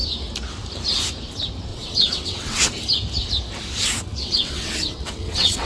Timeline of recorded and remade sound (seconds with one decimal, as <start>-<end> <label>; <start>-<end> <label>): 0.0-1.7 recorded; 1.7-2.7 remade; 2.7-4.2 recorded; 4.2-5.7 remade